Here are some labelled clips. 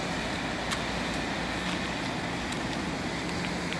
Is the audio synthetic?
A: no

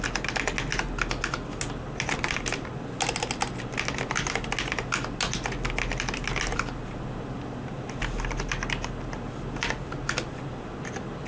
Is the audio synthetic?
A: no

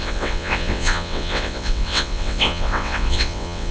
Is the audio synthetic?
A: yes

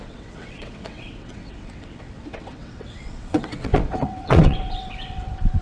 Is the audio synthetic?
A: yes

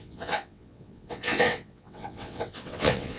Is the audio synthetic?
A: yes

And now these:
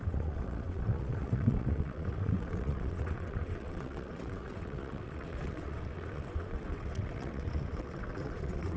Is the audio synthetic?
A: yes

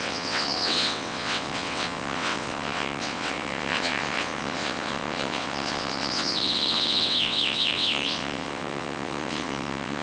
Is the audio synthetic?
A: yes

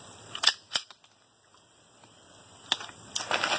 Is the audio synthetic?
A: no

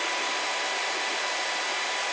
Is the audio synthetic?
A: no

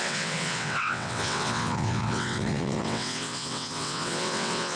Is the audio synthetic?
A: yes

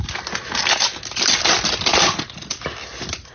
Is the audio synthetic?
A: no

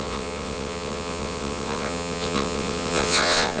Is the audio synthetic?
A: yes